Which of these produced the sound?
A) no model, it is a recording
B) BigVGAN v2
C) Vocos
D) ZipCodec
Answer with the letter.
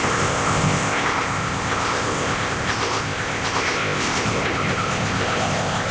D